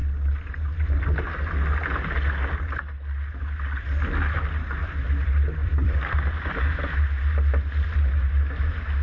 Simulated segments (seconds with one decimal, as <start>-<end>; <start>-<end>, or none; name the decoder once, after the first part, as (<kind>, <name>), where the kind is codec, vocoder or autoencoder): 5.6-6.6 (vocoder, BigVGAN v2)